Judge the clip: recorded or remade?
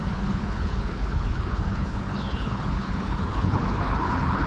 remade